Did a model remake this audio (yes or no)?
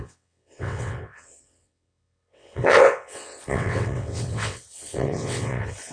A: yes